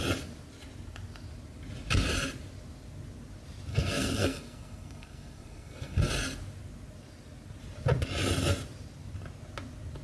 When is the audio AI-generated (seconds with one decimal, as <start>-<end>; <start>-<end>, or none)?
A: 3.7-6.1